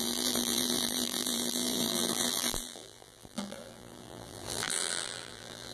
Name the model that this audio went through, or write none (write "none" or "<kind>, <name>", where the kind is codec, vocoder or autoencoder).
vocoder, BigVGAN v2